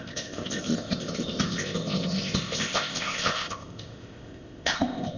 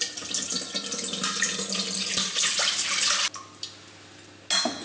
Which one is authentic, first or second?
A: second